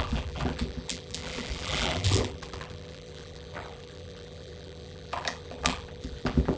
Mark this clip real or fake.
fake